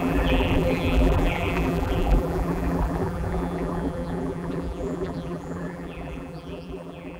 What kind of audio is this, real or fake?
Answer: fake